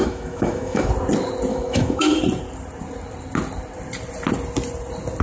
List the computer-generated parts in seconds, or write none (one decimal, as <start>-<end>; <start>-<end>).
0.0-0.9; 1.5-2.2